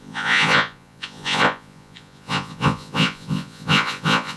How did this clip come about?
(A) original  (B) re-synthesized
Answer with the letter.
B